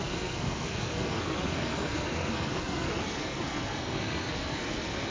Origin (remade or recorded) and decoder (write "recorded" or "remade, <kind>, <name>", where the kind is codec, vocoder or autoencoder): remade, codec, SNAC